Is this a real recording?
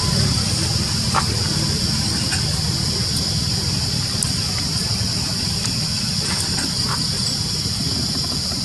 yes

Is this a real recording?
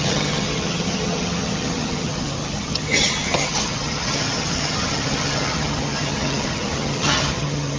no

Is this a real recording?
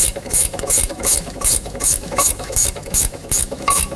no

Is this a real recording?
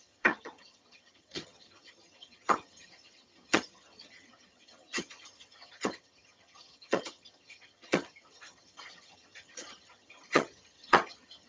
no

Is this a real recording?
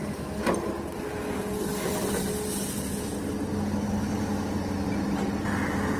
yes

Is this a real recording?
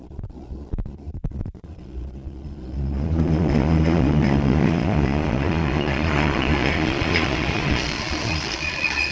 no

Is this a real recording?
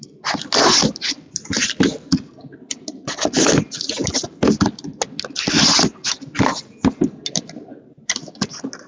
yes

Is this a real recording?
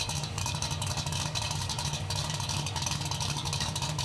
no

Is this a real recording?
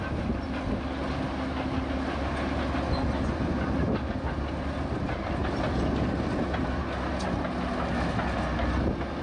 yes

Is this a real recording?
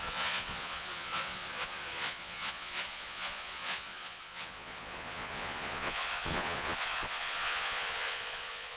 no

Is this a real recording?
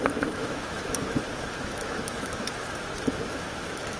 no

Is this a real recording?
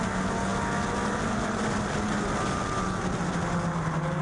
yes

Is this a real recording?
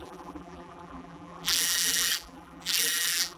no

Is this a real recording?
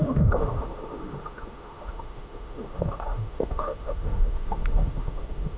no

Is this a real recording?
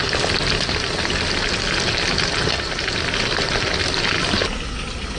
yes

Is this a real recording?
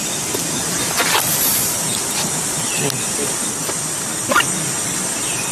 yes